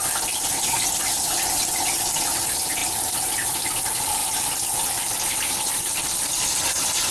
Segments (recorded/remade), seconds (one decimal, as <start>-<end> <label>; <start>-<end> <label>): 0.0-4.2 recorded; 4.2-4.9 remade; 4.9-7.1 recorded